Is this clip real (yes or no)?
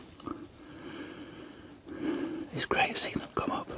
yes